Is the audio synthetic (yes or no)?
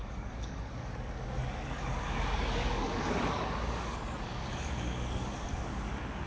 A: yes